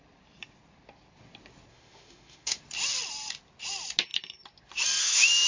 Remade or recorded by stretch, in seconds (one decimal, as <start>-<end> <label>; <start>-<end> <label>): 0.0-1.7 recorded; 1.7-2.6 remade; 2.6-5.0 recorded; 5.0-5.5 remade